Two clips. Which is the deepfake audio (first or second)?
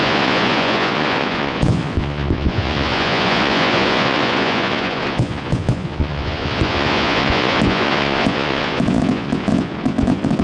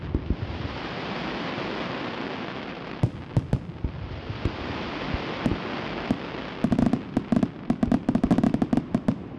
first